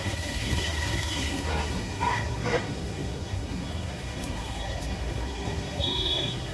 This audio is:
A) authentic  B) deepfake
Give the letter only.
B